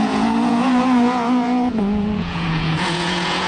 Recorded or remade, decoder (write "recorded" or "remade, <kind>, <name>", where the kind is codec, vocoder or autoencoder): remade, vocoder, Vocos